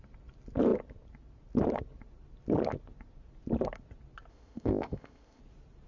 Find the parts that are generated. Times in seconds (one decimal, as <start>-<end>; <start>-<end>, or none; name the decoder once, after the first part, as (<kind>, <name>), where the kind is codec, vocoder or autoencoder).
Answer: 4.3-5.4 (codec, ZipCodec)